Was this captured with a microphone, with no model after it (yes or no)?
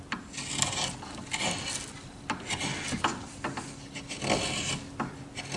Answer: yes